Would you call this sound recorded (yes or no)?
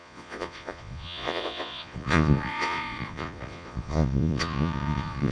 no